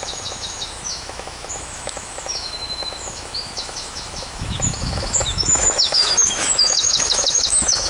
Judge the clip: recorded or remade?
remade